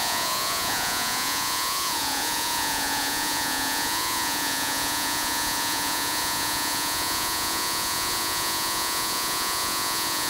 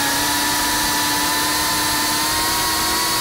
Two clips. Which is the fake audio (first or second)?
first